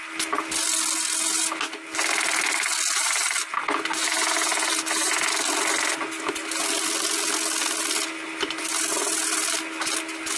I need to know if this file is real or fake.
real